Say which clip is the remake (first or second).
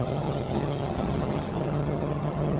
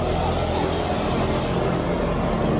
first